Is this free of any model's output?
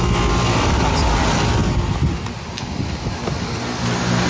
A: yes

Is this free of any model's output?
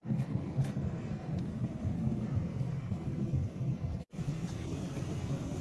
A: no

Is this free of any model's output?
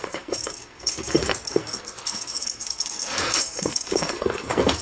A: no